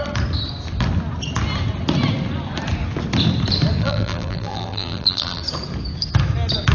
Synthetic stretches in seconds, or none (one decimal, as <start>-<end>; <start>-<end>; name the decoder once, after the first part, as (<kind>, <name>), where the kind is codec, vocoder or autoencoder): 3.8-5.4 (vocoder, BigVGAN v2)